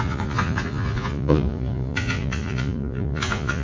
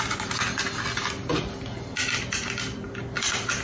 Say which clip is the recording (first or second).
second